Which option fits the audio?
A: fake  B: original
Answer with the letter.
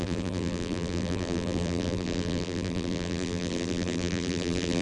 A